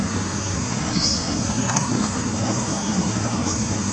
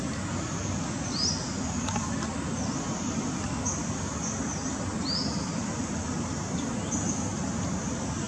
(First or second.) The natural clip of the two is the second